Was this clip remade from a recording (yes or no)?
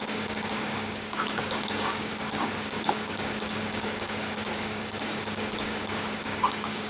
yes